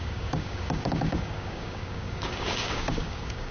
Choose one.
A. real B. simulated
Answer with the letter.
B